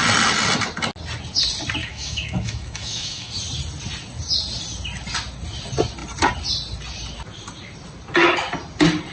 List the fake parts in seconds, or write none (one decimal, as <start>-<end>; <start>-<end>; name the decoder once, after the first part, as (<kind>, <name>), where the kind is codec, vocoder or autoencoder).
1.8-3.3 (autoencoder, DAC-VAE)